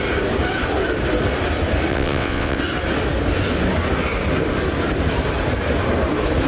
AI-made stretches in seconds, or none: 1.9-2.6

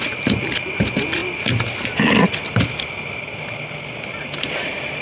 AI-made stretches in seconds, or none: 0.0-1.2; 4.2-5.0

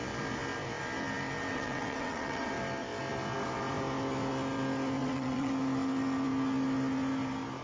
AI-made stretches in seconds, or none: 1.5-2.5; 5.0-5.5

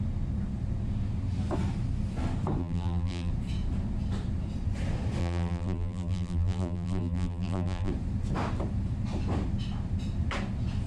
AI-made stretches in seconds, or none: 2.6-3.3; 5.2-7.9